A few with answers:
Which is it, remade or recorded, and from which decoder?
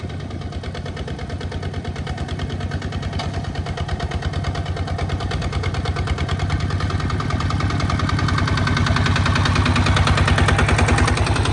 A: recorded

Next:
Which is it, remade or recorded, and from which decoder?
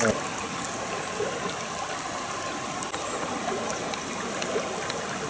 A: recorded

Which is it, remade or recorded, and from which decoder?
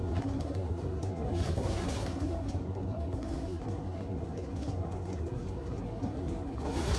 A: remade, codec, SNAC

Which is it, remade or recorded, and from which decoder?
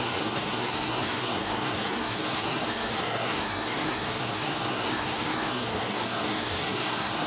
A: remade, codec, SNAC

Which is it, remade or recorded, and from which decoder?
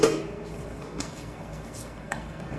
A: remade, codec, SNAC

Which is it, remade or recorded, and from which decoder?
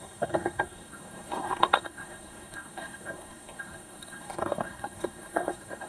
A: remade, codec, SNAC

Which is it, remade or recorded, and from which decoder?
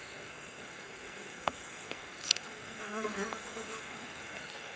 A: remade, codec, SNAC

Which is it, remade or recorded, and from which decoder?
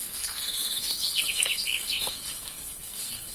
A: remade, codec, SNAC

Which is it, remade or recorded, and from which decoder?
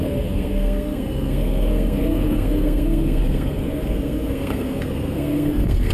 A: remade, codec, SNAC